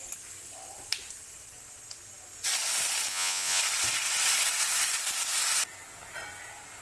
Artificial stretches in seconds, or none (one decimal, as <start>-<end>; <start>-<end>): 3.1-3.6